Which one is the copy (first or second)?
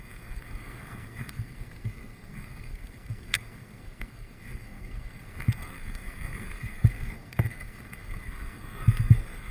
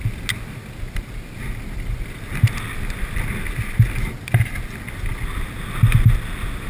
first